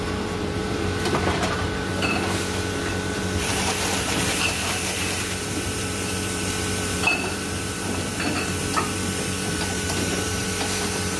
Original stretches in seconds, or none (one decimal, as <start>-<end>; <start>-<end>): 1.9-3.4

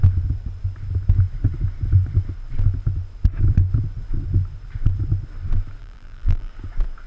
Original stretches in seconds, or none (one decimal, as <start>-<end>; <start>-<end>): 0.0-5.8; 6.5-7.1

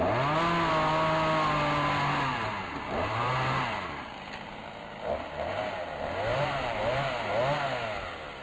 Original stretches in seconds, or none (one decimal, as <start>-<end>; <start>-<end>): 0.0-2.3; 5.6-6.3; 7.1-8.4

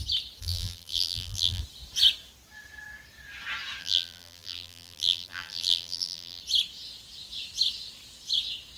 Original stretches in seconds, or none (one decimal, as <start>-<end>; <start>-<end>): 0.0-0.4; 1.6-3.8; 6.4-8.8

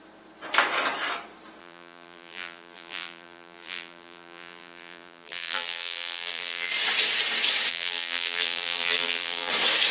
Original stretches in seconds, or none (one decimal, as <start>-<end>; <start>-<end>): 0.0-1.6; 6.7-7.7; 9.5-9.9

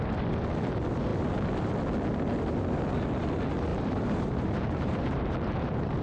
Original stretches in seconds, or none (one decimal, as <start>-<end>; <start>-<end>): 0.0-3.7

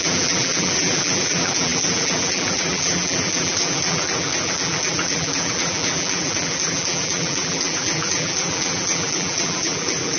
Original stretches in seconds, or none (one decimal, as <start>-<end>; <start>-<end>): none